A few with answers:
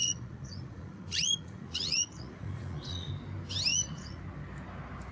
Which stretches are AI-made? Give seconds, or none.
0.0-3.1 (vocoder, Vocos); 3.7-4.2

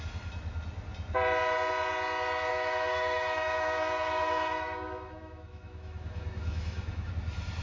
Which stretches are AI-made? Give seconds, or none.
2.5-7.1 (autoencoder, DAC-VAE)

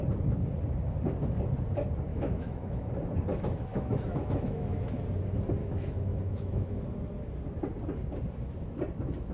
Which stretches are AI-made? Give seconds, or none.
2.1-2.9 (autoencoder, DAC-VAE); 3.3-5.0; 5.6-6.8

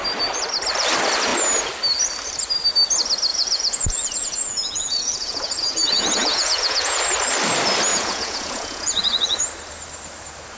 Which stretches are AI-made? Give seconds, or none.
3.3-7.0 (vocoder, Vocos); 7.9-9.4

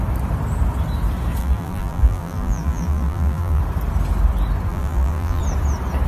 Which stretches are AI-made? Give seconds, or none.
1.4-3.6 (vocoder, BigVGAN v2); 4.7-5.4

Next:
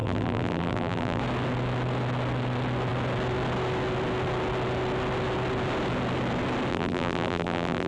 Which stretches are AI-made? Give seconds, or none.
0.0-1.2 (vocoder, BigVGAN v2); 6.7-7.9